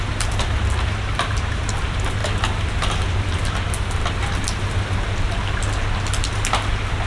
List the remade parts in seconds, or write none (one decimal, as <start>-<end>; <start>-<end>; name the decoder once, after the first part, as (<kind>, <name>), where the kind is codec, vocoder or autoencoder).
none